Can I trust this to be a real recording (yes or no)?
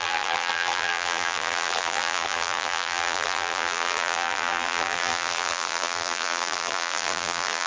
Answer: no